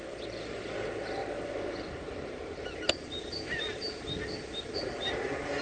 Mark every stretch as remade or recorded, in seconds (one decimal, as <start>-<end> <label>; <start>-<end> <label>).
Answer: 0.0-5.6 recorded